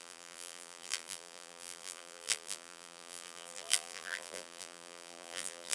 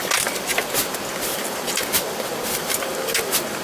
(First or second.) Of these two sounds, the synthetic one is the first